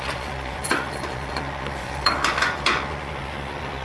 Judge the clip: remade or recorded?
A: remade